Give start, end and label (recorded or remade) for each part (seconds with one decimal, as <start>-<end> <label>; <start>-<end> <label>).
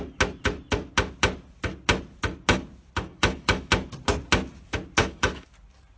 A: 0.0-3.1 recorded; 3.1-3.7 remade; 3.7-5.0 recorded; 5.0-5.5 remade; 5.5-6.0 recorded